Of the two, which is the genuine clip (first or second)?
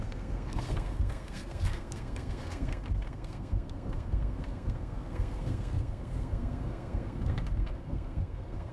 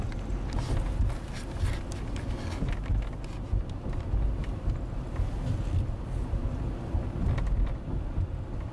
second